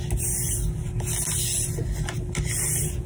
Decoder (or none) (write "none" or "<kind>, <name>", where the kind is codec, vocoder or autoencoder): none